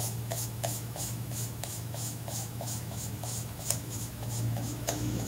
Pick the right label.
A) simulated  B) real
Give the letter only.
A